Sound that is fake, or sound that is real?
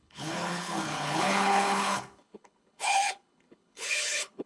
fake